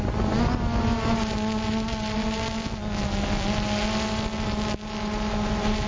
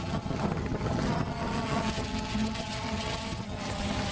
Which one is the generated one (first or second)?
second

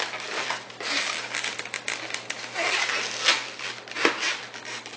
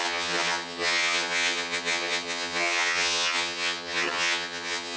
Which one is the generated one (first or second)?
second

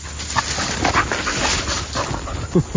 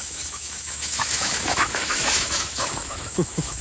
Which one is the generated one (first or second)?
second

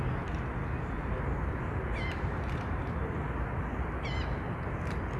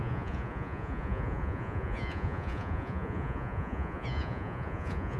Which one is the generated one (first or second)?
second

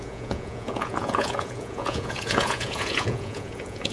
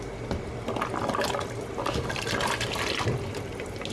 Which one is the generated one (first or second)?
first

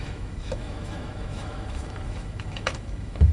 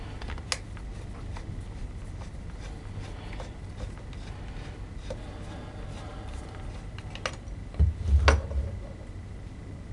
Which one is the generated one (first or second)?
first